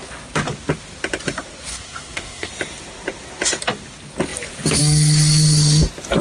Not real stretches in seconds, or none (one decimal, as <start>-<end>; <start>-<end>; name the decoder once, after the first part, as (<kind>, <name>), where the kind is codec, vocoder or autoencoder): 1.7-2.5 (codec, SNAC)